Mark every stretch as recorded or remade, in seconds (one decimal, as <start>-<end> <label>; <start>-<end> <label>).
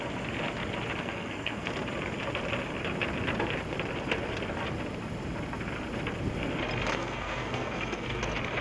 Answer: 0.0-1.0 recorded; 1.0-1.7 remade; 1.7-6.9 recorded; 6.9-8.2 remade; 8.2-8.6 recorded